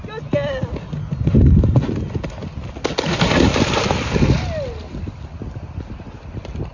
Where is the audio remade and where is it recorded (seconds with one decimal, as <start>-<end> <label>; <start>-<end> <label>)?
0.0-6.7 recorded